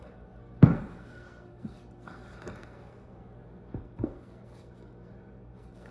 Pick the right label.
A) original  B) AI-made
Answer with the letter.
B